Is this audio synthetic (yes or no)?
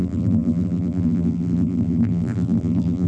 yes